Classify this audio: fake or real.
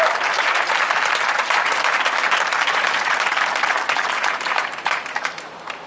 fake